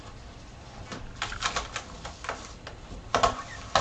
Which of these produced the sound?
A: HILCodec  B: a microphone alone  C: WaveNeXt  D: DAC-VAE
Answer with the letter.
B